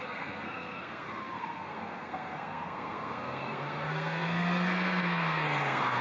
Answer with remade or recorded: remade